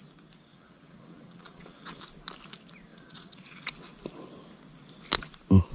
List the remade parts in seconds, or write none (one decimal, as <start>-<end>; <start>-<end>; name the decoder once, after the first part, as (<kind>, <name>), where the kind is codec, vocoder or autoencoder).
0.5-2.0 (vocoder, WaveNeXt); 2.9-3.7

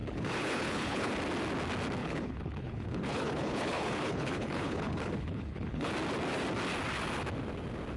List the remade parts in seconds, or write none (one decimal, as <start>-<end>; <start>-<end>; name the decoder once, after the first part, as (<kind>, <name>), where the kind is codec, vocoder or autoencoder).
0.0-1.1 (codec, HILCodec); 2.0-5.9

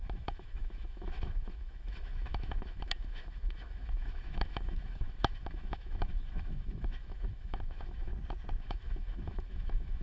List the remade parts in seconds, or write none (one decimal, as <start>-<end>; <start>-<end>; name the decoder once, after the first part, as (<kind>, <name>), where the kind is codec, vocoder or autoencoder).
0.0-8.1 (autoencoder, DAC-VAE); 8.6-10.0

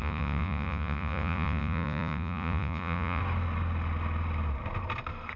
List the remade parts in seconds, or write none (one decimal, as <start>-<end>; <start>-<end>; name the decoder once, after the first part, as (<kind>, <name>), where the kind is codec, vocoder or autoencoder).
0.0-3.2 (vocoder, Vocos)